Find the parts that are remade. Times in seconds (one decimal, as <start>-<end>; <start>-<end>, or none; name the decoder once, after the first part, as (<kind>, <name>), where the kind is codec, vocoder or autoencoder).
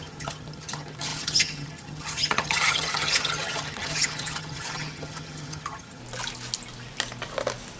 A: 0.0-6.0 (vocoder, HiFi-GAN)